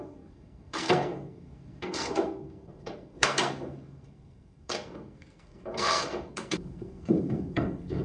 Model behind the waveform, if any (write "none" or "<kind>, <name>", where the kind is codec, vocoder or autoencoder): codec, SNAC